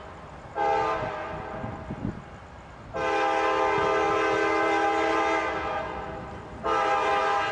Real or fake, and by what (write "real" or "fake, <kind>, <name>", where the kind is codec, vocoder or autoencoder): real